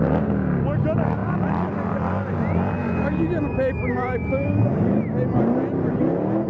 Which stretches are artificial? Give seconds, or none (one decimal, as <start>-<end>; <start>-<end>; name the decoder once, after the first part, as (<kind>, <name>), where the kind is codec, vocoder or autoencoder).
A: none